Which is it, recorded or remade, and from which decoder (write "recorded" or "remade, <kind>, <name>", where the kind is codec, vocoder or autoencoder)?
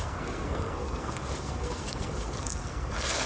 remade, codec, SNAC